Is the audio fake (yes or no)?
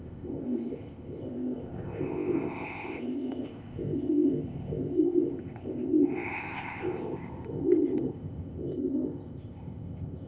yes